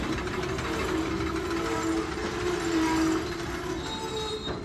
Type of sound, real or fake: real